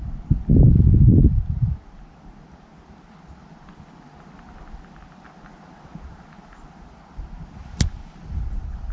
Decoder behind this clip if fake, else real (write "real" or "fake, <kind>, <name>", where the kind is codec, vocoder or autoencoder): real